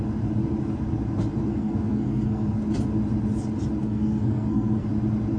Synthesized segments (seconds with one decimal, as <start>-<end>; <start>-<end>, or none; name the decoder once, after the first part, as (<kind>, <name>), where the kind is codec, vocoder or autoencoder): 1.5-2.6 (codec, SNAC); 3.8-4.9